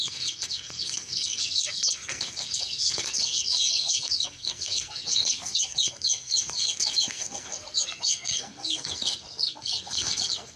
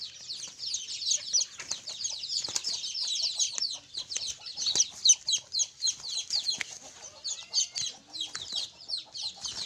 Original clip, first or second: second